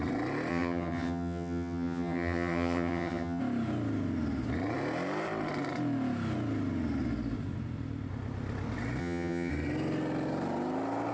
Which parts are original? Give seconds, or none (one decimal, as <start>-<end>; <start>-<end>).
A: 0.0-0.5; 3.4-9.0; 9.5-11.1